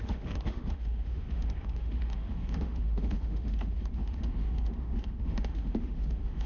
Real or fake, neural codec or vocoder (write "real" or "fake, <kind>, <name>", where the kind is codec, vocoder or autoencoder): fake, autoencoder, DAC-VAE